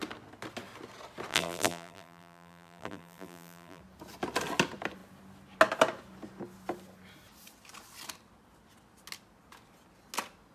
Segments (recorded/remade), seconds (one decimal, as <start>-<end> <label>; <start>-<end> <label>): 0.0-1.3 recorded; 1.3-3.8 remade; 3.8-10.5 recorded